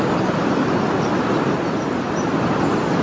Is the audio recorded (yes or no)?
yes